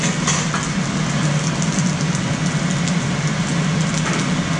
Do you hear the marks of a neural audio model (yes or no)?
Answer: no